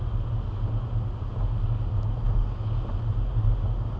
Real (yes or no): yes